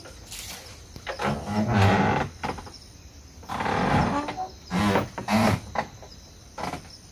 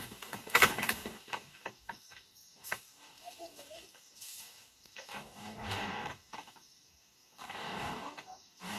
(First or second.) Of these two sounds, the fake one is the second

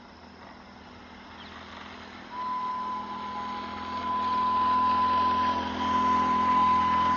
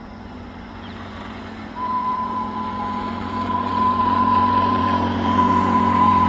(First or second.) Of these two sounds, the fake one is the second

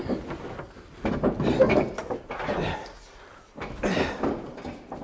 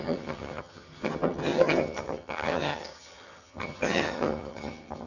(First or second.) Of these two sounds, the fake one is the second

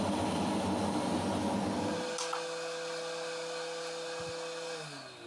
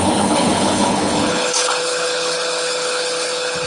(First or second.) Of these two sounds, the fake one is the second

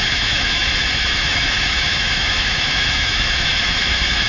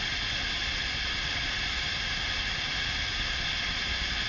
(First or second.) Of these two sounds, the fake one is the first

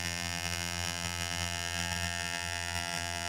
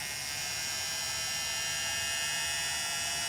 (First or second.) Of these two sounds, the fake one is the first